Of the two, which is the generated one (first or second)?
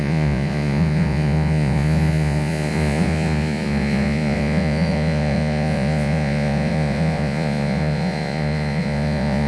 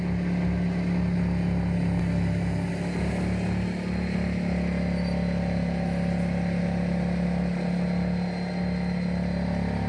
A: first